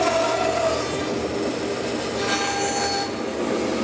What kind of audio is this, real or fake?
real